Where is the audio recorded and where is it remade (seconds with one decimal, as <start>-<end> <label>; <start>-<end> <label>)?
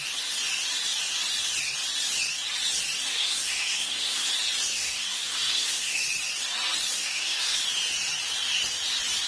0.0-3.1 recorded; 3.1-4.3 remade; 4.3-4.7 recorded; 4.7-6.0 remade; 6.0-7.0 recorded; 7.0-7.6 remade; 7.6-9.3 recorded